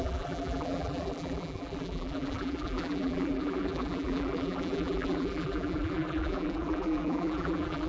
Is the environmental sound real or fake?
fake